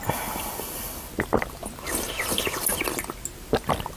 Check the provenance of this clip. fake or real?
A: real